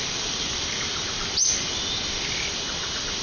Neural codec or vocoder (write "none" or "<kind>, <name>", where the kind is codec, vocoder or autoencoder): none